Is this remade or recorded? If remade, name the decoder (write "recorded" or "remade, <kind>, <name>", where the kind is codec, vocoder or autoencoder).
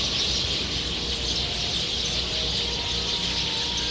recorded